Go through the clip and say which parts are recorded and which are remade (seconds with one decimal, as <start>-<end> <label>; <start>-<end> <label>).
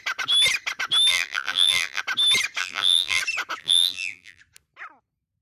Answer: 0.0-1.1 recorded; 1.1-2.0 remade; 2.0-2.6 recorded; 2.6-3.2 remade; 3.2-3.6 recorded; 3.6-4.4 remade; 4.4-5.4 recorded